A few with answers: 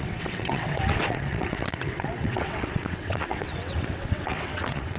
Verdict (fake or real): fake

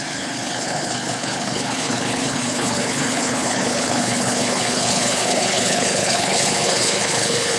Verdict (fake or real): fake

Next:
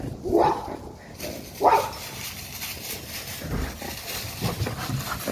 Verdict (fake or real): real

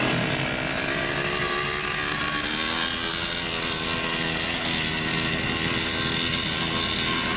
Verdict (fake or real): real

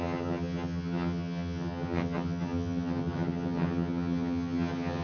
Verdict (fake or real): fake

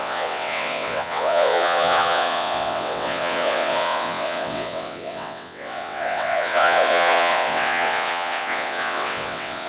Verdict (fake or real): fake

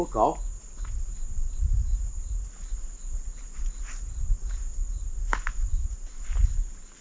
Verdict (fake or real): real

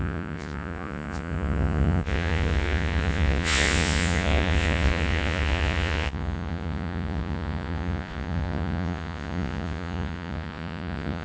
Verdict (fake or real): fake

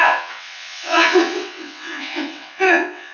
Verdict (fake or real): fake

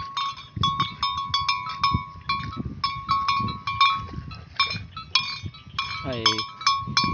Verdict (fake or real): real